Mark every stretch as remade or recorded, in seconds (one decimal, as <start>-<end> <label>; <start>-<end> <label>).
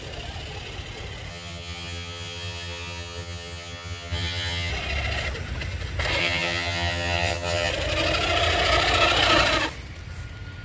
0.0-1.3 recorded; 1.3-4.7 remade; 4.7-6.2 recorded; 6.2-7.7 remade; 7.7-10.6 recorded